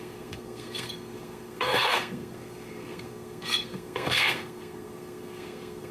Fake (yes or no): yes